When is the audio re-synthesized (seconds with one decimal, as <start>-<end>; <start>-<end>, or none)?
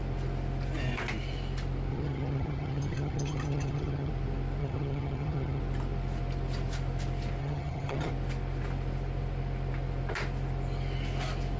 1.9-4.1; 4.6-5.6; 7.4-8.1